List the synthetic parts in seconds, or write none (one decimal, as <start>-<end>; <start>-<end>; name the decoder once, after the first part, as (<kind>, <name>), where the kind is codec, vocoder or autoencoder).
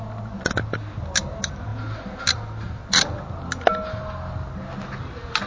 none